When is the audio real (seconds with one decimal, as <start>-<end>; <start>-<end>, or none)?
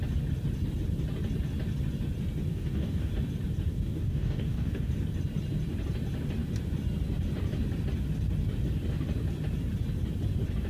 0.0-2.5; 3.1-3.7; 4.9-10.7